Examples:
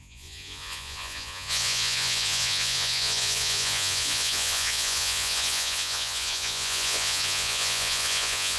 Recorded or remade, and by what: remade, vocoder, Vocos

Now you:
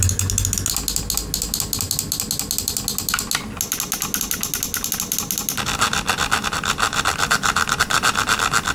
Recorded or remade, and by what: recorded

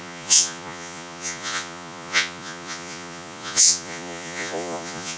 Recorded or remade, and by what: remade, vocoder, Vocos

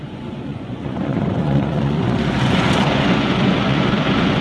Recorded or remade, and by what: remade, vocoder, Vocos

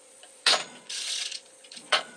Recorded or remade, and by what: remade, vocoder, Vocos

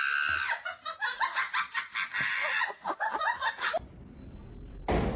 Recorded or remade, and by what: recorded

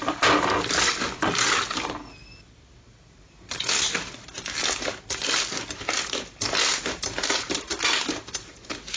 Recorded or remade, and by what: recorded